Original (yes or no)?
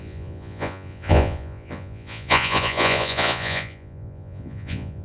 no